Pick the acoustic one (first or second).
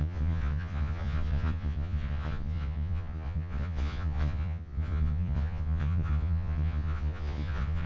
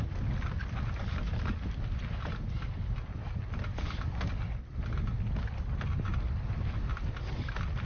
second